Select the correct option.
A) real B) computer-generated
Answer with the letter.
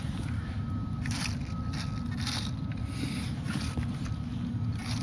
A